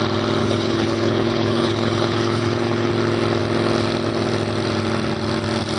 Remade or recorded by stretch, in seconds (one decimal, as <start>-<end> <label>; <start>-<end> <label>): 0.0-0.4 recorded; 0.4-2.9 remade; 2.9-5.8 recorded